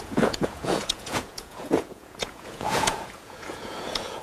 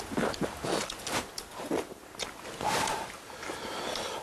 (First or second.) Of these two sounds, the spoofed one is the first